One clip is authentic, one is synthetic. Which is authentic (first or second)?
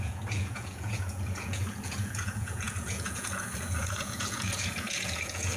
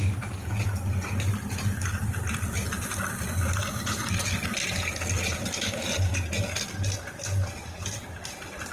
second